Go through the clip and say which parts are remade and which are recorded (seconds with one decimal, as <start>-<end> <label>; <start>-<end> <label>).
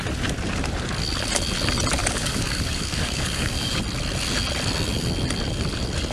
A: 0.0-2.0 recorded; 2.0-3.8 remade; 3.8-6.1 recorded